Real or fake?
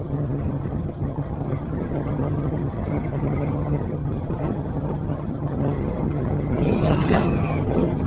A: fake